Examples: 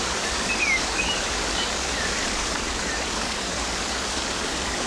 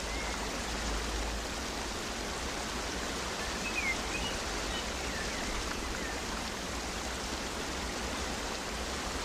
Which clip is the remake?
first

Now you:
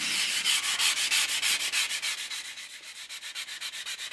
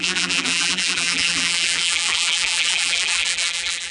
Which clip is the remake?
second